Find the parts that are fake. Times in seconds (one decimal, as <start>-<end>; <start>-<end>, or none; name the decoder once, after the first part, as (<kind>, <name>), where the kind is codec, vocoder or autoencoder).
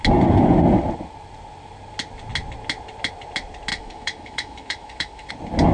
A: 3.7-5.3 (autoencoder, DAC-VAE)